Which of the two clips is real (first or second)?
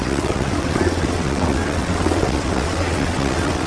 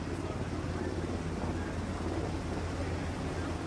second